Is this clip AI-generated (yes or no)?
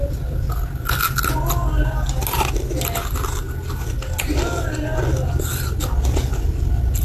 no